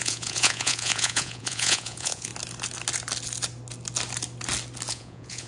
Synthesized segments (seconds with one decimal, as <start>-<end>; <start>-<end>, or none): 0.0-2.3; 4.9-5.5